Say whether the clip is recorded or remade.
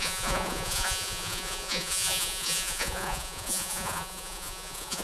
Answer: remade